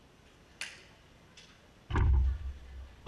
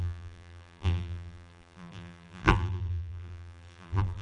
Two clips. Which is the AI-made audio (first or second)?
second